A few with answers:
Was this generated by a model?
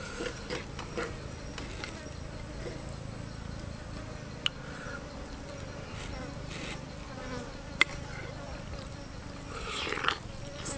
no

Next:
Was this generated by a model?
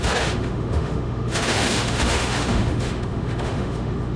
yes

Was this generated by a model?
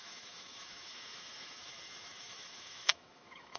yes